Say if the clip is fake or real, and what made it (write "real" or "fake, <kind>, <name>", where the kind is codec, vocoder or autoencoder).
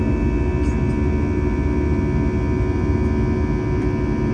real